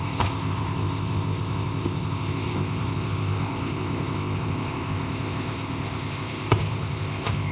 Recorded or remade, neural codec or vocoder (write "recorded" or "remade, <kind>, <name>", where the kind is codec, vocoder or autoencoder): remade, codec, ZipCodec